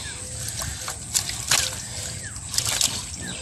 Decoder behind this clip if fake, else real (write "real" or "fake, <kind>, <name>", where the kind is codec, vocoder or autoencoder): real